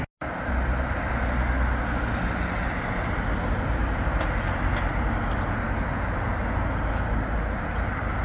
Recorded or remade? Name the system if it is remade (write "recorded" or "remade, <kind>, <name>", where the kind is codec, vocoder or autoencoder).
recorded